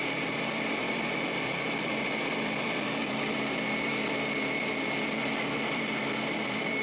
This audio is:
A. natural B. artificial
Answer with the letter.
B